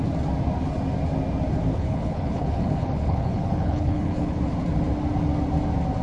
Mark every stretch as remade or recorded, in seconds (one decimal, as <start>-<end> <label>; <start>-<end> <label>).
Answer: 0.0-1.7 recorded; 1.7-4.4 remade; 4.4-6.0 recorded